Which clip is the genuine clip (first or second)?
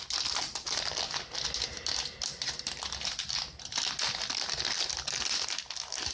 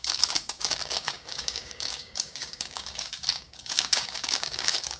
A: first